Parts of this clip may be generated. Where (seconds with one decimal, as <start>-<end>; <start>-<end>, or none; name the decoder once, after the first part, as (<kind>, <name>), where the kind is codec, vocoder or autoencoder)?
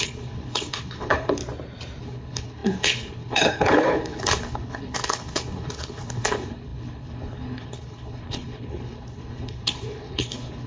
0.0-1.4 (codec, HILCodec); 2.0-10.7